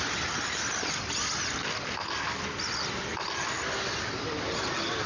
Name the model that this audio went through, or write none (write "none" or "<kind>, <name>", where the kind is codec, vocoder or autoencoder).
none